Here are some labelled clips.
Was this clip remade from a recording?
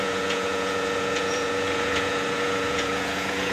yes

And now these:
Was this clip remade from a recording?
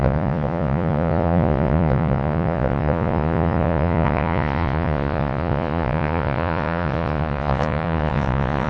yes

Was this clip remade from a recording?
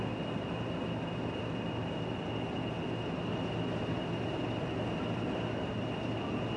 no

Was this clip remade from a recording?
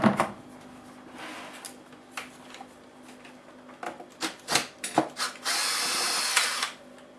no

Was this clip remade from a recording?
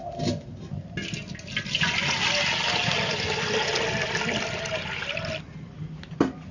no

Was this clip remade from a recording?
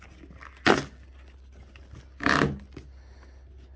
no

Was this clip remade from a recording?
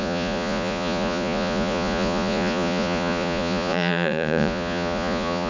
yes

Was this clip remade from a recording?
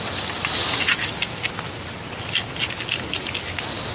no